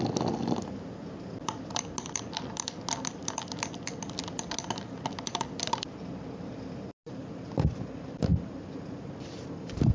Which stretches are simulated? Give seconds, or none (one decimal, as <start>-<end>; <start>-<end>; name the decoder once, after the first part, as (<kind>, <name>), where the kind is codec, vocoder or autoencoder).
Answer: none